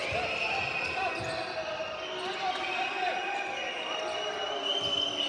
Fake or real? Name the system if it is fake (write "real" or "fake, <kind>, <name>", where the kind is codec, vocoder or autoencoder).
real